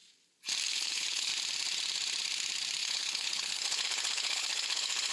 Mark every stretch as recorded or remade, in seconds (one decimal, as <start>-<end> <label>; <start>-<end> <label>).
0.0-0.7 recorded; 0.7-1.3 remade; 1.3-2.8 recorded; 2.8-5.1 remade